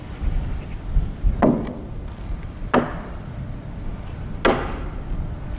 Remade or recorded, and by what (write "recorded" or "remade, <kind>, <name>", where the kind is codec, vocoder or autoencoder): recorded